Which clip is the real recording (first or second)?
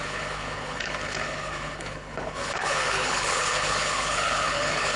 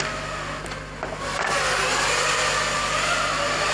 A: second